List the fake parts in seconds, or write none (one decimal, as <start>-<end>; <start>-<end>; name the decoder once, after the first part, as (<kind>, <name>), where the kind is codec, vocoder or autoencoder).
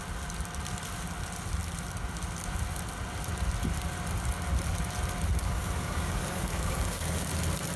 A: 5.4-7.3 (codec, DAC)